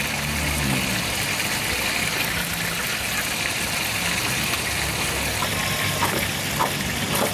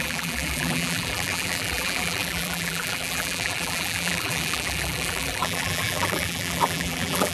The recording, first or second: first